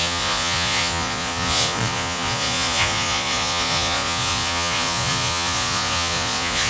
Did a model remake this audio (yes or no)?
yes